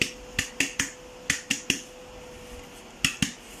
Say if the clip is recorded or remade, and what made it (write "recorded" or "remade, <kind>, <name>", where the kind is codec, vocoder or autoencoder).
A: recorded